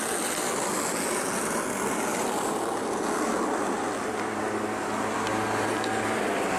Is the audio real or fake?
real